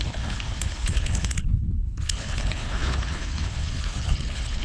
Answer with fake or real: fake